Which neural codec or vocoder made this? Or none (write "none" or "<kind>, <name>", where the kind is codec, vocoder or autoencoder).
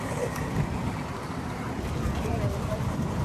vocoder, BigVGAN v2